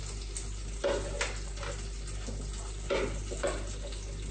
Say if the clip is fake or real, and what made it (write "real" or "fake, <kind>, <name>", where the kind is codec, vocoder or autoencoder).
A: real